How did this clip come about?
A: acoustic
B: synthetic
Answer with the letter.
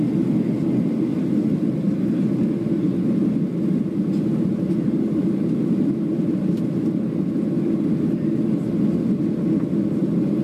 A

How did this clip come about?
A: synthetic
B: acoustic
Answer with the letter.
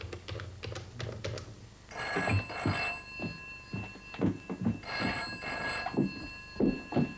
B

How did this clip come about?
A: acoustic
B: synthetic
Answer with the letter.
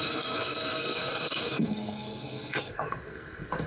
B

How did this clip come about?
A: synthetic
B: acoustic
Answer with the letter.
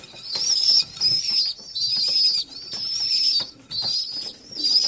B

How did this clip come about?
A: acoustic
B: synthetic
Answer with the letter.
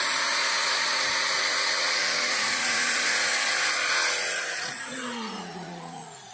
B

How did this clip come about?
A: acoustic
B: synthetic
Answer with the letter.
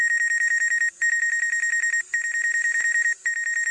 B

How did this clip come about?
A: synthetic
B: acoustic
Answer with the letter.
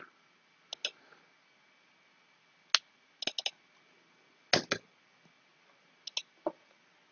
B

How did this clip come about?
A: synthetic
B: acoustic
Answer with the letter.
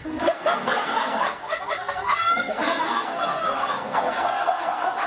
A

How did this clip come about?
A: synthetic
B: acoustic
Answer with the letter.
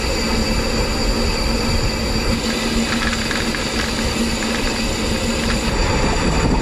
B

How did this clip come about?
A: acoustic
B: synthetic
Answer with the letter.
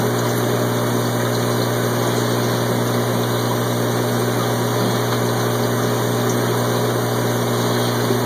A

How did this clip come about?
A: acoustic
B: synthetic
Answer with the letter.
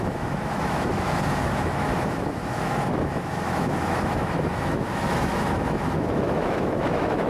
B